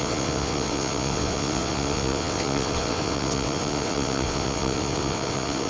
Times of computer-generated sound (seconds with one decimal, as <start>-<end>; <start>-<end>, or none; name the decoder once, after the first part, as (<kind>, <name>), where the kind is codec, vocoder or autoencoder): 0.0-5.7 (vocoder, WaveNeXt)